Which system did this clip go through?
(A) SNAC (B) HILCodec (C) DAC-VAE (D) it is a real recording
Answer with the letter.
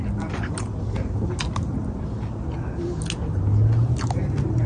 D